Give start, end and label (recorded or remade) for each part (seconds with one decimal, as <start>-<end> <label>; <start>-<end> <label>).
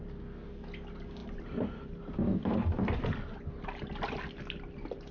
0.0-5.1 recorded